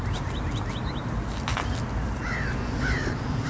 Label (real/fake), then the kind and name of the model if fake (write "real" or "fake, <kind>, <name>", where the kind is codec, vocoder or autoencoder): real